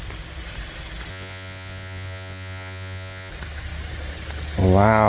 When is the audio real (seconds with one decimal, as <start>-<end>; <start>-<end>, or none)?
0.0-1.1; 3.3-5.1